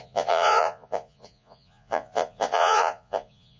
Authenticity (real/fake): fake